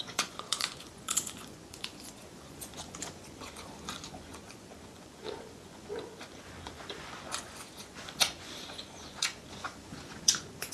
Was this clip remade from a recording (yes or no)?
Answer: yes